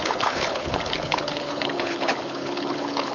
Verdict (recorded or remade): remade